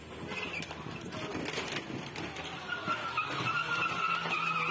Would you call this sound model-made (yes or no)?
no